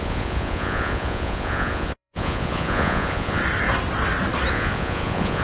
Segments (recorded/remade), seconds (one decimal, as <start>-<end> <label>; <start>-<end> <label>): 0.0-3.4 remade; 3.4-4.5 recorded; 4.5-5.4 remade